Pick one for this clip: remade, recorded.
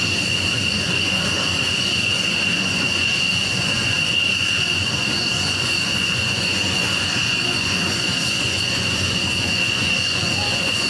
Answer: remade